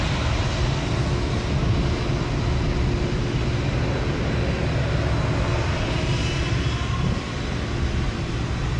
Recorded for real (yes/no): yes